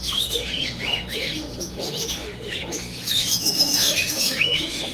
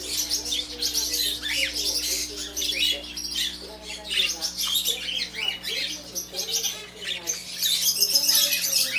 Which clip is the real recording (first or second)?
second